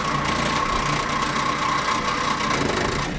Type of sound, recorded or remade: recorded